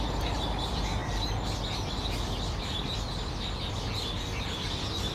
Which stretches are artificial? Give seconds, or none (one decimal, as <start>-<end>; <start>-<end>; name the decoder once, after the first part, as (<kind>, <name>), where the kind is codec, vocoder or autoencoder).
none